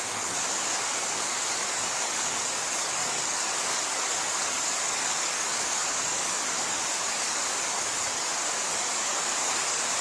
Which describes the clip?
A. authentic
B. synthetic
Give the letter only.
B